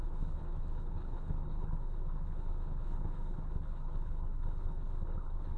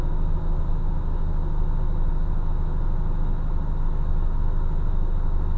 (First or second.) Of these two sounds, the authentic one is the second